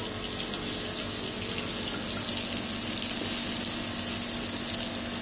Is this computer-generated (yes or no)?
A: no